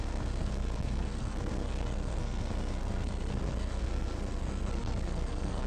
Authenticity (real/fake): fake